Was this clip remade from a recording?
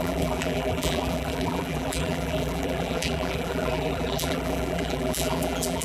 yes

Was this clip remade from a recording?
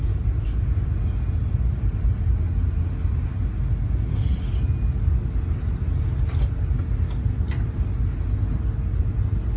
no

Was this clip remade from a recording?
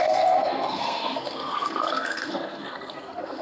yes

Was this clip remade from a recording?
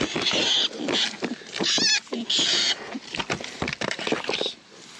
no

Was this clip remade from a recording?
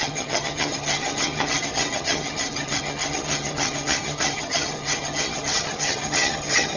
yes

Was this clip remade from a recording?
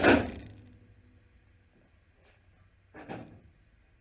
no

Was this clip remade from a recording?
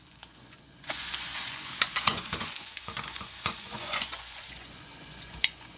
yes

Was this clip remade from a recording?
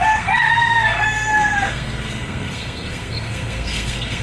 yes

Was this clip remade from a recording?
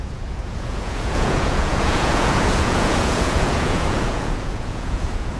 yes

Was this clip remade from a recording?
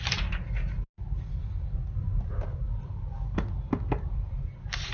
no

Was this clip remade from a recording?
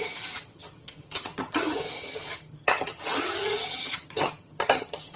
yes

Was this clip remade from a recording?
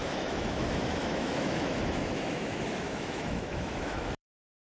yes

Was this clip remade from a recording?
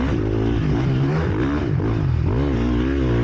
no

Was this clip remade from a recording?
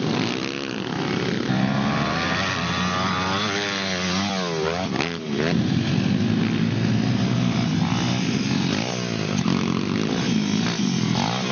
no